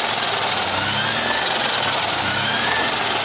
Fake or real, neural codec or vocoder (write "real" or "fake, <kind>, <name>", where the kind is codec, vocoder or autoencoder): real